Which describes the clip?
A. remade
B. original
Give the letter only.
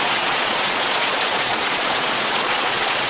A